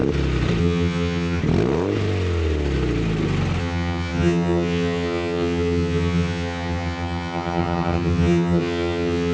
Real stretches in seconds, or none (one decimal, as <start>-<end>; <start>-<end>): 0.0-0.6; 1.4-3.6